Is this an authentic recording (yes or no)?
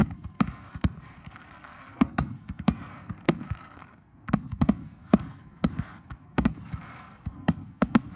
no